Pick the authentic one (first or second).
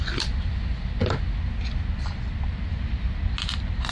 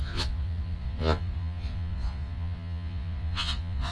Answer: first